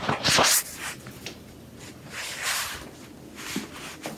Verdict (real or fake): real